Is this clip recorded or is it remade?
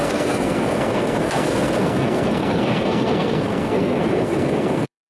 remade